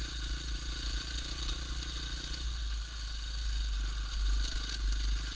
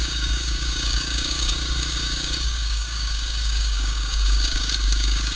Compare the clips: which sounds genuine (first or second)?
first